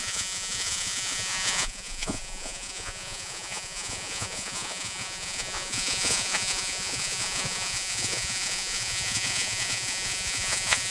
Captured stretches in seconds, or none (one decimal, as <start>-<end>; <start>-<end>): none